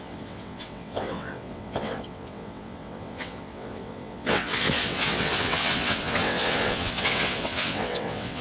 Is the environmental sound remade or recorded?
remade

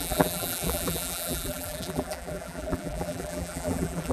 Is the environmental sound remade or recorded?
remade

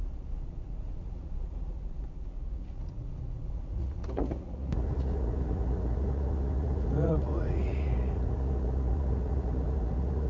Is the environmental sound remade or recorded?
remade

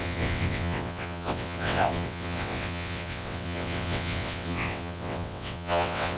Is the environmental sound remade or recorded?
remade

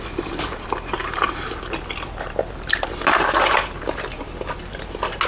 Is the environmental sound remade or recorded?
recorded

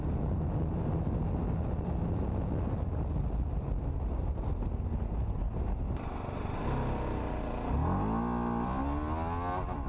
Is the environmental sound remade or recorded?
recorded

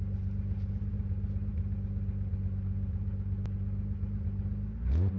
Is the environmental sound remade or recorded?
recorded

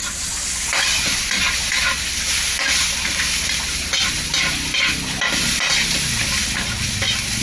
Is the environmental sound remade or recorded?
recorded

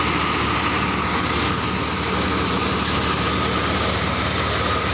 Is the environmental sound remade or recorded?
recorded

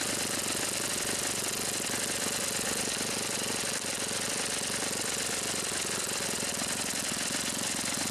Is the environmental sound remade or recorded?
recorded